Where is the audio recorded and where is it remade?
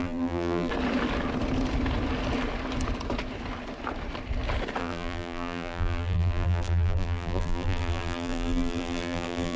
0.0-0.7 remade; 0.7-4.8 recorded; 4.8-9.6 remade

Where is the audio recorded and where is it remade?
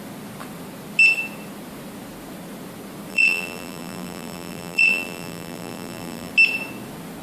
0.0-3.1 recorded; 3.1-6.3 remade; 6.3-7.2 recorded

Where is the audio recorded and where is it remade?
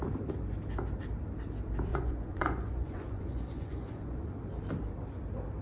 0.0-1.9 recorded; 1.9-4.3 remade; 4.3-5.6 recorded